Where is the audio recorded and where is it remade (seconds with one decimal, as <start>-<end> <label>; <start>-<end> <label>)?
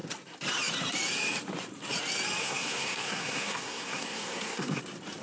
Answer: 0.0-2.4 recorded; 2.4-4.8 remade; 4.8-5.2 recorded